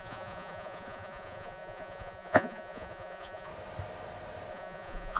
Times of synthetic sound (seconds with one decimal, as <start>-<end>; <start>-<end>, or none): 0.0-3.5; 4.5-5.2